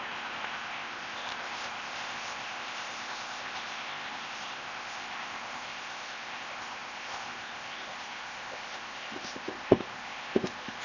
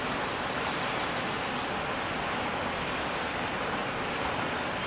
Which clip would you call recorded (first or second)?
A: second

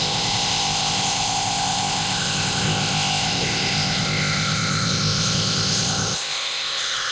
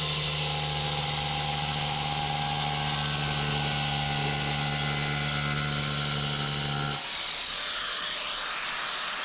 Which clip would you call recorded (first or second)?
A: second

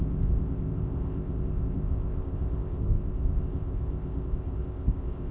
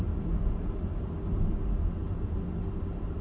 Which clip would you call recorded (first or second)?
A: second